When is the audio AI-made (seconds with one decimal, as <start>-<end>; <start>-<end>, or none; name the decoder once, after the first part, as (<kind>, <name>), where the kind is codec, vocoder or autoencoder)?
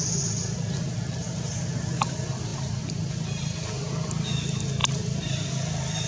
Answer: 2.5-3.1 (vocoder, BigVGAN v2); 4.8-5.3